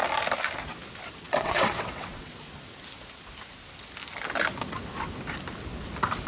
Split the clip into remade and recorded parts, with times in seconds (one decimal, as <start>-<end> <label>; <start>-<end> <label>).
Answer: 0.0-1.2 recorded; 1.2-2.3 remade; 2.3-6.3 recorded